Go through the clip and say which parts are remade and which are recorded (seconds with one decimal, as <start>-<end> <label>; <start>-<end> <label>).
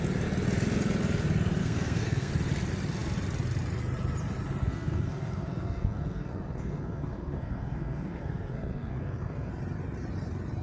0.0-1.6 recorded; 1.6-2.3 remade; 2.3-4.6 recorded; 4.6-9.5 remade; 9.5-10.6 recorded